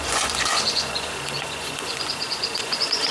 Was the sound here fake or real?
fake